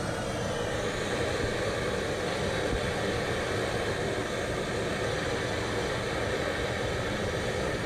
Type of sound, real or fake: real